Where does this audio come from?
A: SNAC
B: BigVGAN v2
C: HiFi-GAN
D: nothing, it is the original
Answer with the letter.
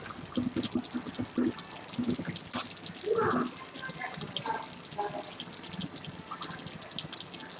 D